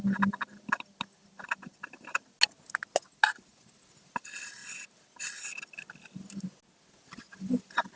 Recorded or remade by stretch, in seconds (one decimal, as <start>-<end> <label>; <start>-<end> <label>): 0.0-8.0 recorded